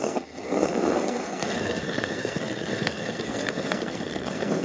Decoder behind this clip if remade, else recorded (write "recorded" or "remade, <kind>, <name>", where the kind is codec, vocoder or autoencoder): remade, codec, SNAC